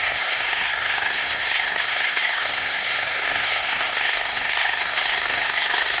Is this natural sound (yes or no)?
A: no